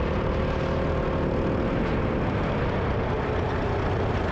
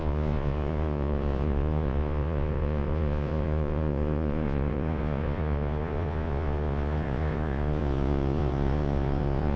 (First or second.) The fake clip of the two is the second